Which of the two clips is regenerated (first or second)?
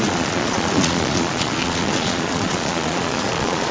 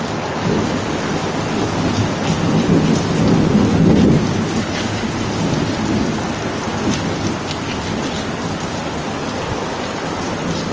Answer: first